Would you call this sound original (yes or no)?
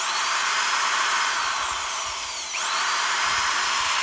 yes